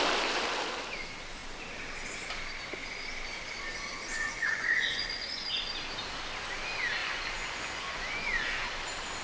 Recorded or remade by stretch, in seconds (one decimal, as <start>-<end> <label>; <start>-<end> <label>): 0.0-4.1 recorded; 4.1-5.7 remade; 5.7-7.0 recorded; 7.0-8.7 remade; 8.7-9.2 recorded